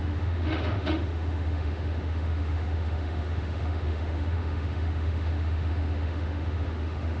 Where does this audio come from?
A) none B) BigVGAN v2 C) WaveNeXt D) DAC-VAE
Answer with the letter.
D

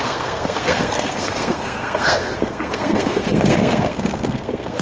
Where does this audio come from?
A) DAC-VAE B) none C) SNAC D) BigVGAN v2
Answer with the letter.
C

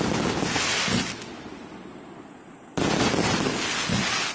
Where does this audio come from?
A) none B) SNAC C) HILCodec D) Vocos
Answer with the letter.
A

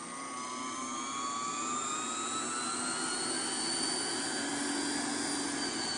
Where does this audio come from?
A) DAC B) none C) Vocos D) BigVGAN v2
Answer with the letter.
B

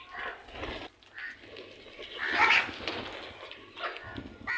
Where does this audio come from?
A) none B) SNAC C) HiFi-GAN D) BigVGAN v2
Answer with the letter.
A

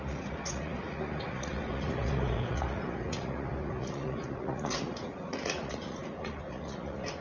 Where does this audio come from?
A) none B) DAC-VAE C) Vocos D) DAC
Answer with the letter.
C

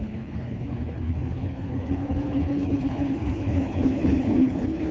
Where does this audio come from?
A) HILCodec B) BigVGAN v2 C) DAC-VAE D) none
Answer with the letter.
A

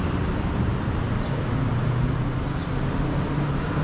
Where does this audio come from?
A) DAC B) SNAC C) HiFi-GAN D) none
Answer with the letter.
D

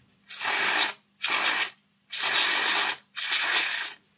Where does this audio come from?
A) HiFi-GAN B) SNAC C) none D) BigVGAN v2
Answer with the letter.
C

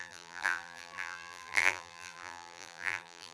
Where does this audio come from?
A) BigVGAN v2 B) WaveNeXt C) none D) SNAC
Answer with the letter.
A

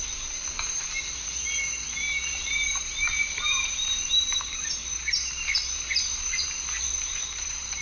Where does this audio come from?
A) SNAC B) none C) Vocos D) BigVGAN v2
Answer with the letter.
D